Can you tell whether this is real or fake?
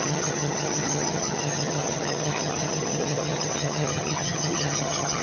fake